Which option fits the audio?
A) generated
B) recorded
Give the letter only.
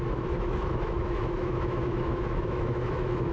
A